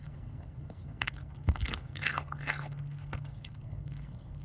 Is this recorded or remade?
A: remade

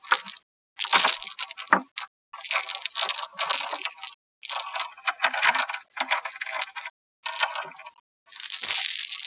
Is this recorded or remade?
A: recorded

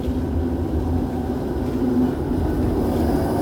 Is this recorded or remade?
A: recorded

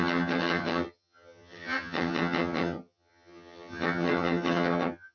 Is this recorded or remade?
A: remade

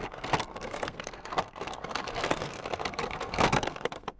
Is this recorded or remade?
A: remade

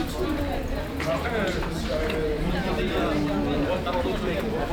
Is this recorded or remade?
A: recorded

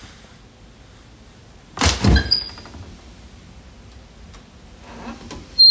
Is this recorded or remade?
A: recorded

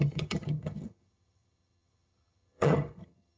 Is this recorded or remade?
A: remade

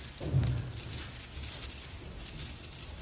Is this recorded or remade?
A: recorded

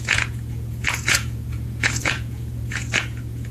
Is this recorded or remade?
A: remade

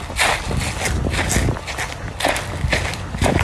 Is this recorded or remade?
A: recorded